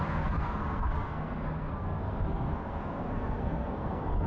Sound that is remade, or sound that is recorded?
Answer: remade